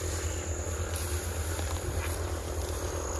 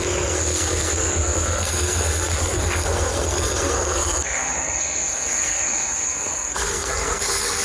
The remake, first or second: second